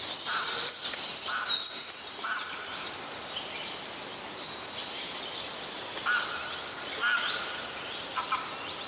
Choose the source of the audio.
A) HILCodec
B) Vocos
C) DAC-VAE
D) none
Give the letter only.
D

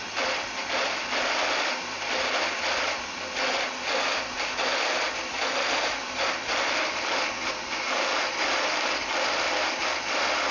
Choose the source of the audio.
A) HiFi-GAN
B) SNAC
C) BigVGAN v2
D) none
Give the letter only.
D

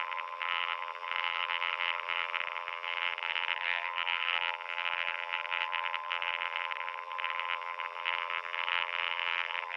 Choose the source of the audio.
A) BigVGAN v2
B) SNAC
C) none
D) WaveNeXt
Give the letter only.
A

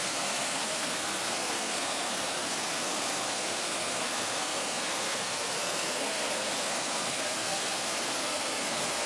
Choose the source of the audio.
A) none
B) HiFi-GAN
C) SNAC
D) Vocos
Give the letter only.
C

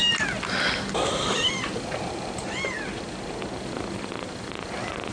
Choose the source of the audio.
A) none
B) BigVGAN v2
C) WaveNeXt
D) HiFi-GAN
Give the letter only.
A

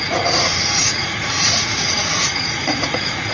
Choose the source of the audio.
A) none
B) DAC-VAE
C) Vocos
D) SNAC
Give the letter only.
C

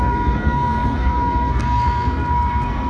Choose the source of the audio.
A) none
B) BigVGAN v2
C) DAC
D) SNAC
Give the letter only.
D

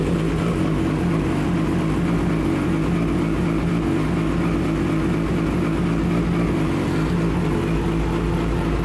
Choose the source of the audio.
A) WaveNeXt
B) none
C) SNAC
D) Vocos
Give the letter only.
B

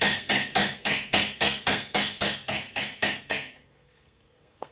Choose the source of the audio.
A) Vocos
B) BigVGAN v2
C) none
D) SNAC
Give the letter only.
D